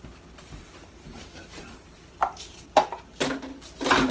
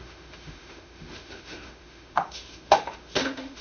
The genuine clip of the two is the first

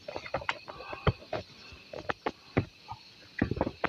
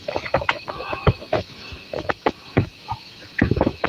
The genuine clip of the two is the first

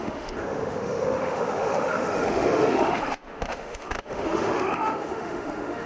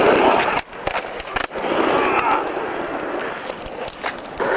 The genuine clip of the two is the second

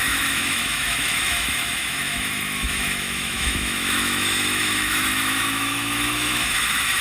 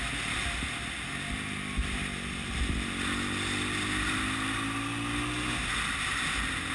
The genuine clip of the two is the second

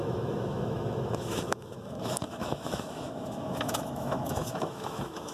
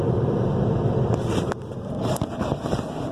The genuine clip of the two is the second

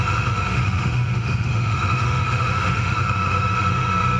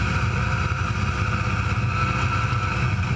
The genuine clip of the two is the second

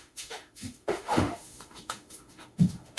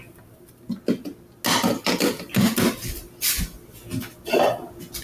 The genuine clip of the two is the second